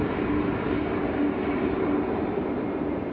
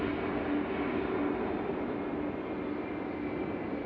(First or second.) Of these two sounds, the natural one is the second